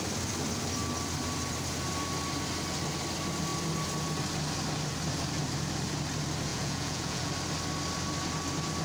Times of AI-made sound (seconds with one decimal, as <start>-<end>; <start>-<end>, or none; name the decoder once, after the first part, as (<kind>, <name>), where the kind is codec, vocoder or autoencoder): 6.5-7.3 (vocoder, Vocos)